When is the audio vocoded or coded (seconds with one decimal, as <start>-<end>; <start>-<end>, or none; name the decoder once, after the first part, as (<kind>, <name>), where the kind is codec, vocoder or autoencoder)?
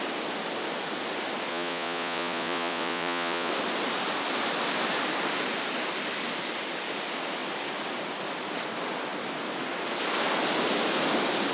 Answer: 1.5-3.5 (vocoder, Vocos)